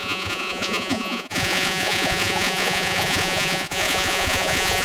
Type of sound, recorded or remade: remade